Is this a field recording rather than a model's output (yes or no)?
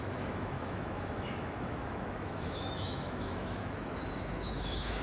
no